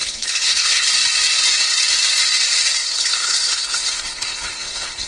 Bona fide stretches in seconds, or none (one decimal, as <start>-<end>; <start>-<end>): 0.9-2.8